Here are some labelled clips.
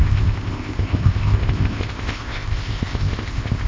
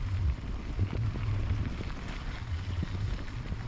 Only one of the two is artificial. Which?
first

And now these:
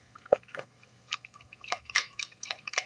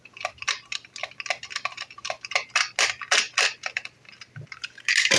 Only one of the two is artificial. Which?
first